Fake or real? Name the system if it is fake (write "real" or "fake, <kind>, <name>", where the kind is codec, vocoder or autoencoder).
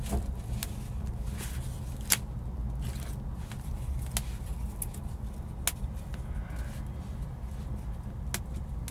real